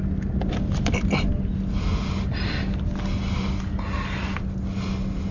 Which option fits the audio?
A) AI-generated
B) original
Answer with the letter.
B